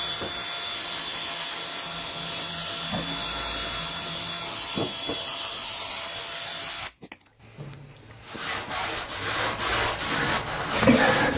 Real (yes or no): yes